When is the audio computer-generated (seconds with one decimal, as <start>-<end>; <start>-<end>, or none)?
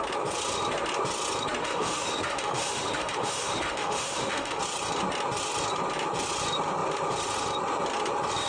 1.6-4.6